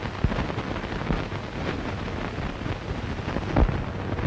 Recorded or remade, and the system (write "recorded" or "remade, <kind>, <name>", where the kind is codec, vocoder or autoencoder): recorded